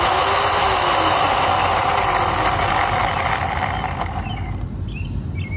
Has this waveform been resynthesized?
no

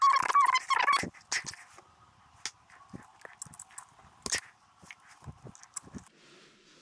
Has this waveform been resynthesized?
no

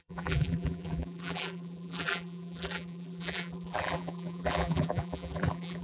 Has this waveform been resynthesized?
yes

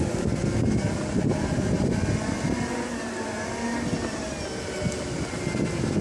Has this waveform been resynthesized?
no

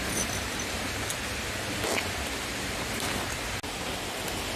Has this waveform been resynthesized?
no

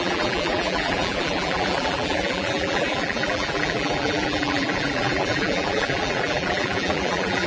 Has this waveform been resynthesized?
yes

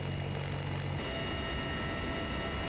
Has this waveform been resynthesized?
no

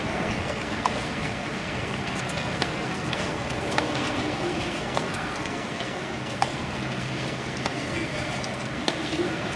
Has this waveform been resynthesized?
yes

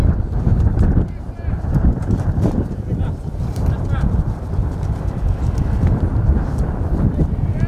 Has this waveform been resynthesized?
no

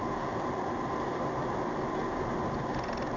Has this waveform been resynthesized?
no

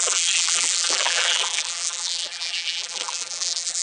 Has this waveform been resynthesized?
yes